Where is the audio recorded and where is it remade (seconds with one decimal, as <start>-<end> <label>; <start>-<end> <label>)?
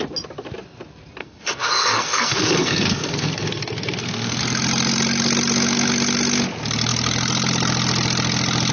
0.0-1.2 recorded; 1.2-4.4 remade; 4.4-8.7 recorded